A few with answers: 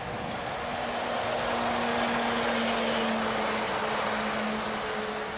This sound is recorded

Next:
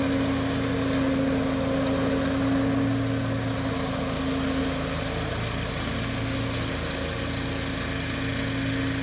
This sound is recorded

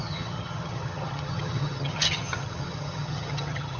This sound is remade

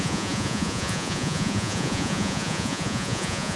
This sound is remade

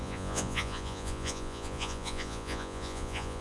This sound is remade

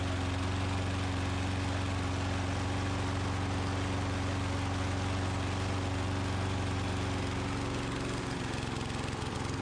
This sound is recorded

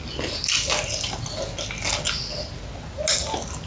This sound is recorded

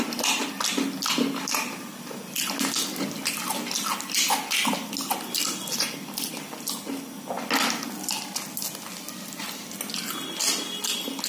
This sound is recorded